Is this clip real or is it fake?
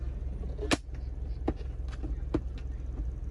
real